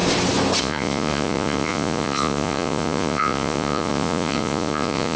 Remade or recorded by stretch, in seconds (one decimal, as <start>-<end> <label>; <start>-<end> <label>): 0.0-0.6 recorded; 0.6-5.2 remade